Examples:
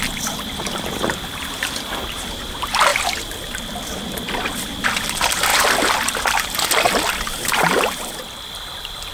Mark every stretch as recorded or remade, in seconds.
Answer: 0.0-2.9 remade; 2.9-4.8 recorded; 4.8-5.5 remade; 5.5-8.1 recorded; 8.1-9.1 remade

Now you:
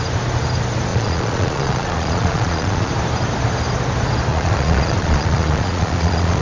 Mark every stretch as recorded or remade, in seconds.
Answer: 0.0-0.9 recorded; 0.9-2.9 remade; 2.9-4.3 recorded; 4.3-6.4 remade

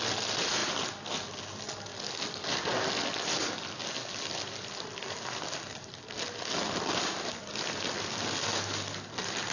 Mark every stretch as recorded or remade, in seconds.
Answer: 0.0-0.6 recorded; 0.6-1.4 remade; 1.4-9.5 recorded

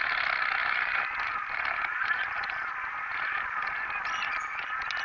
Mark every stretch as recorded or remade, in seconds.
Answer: 0.0-0.6 recorded; 0.6-2.7 remade; 2.7-3.1 recorded; 3.1-3.8 remade; 3.8-5.0 recorded

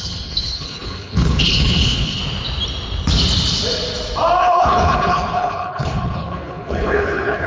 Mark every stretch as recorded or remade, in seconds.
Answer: 0.0-2.2 remade; 2.2-4.4 recorded; 4.4-7.5 remade